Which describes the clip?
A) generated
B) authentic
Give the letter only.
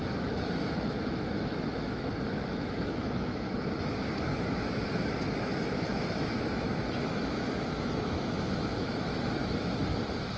A